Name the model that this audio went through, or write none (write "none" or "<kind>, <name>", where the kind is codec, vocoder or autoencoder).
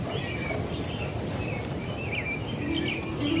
none